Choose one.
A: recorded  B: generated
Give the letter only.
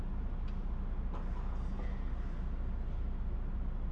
A